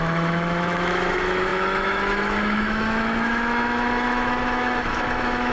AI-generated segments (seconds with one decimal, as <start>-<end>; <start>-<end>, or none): 0.0-5.5